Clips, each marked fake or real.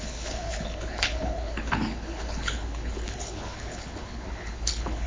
fake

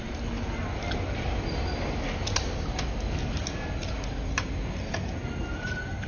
real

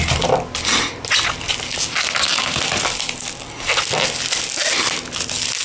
real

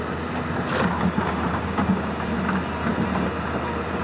real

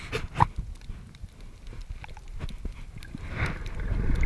real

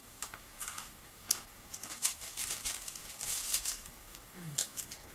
fake